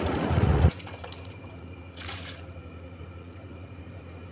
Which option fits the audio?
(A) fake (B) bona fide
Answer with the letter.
A